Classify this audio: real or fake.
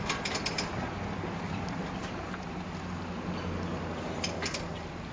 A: real